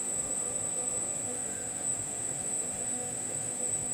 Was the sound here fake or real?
fake